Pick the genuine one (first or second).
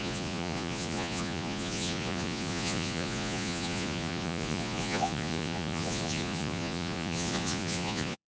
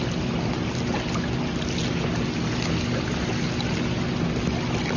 second